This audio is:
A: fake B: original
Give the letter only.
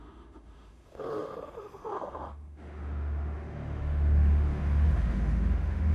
A